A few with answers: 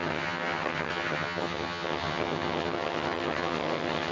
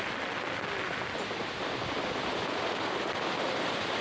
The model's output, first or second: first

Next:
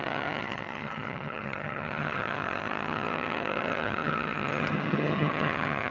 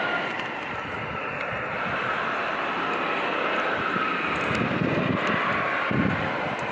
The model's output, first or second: first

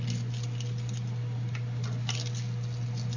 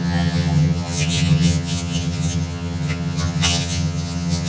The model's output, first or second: second